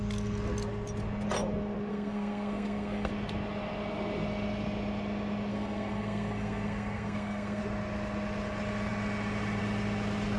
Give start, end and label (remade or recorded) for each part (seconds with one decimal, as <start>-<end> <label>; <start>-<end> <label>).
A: 0.0-1.9 recorded; 1.9-3.1 remade; 3.1-5.5 recorded; 5.5-7.6 remade; 7.6-10.4 recorded

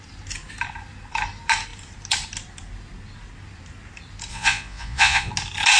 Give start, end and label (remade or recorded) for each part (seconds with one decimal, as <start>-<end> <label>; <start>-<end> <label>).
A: 0.0-4.3 recorded; 4.3-5.3 remade; 5.3-5.8 recorded

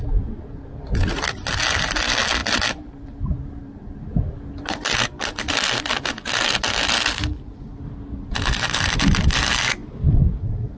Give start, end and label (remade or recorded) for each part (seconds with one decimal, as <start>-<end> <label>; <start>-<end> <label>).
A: 0.0-9.8 recorded; 9.8-10.8 remade

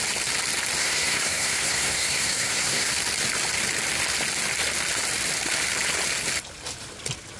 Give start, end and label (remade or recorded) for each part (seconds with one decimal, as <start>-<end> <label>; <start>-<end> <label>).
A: 0.0-0.8 recorded; 0.8-2.9 remade; 2.9-7.4 recorded

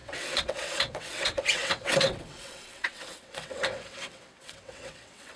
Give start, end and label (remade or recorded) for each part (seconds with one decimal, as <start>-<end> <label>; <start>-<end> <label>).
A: 0.0-5.4 remade

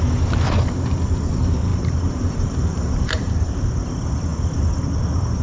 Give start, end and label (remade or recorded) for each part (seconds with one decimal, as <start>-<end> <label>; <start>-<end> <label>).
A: 0.0-1.7 recorded; 1.7-3.5 remade; 3.5-5.4 recorded